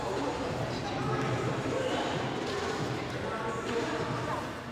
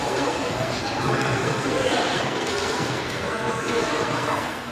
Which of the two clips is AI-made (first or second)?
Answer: second